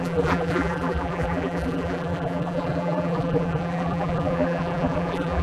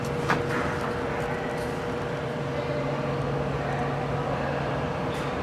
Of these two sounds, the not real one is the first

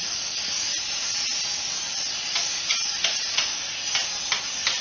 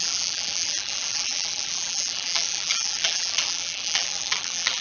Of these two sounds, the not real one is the second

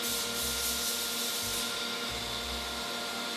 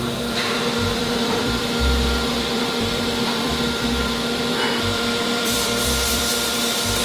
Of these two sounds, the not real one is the second